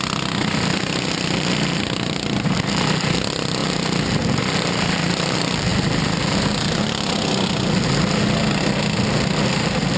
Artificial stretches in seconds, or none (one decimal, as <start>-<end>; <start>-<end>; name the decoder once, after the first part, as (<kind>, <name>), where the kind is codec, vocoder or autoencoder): none